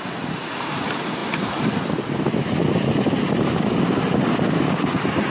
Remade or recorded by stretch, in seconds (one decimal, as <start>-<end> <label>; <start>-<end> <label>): 0.0-5.3 recorded